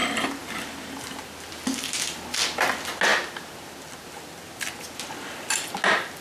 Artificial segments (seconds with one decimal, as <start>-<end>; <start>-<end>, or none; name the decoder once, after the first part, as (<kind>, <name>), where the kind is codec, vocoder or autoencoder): none